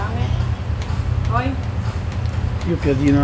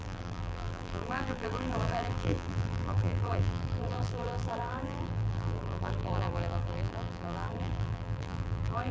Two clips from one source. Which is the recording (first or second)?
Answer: first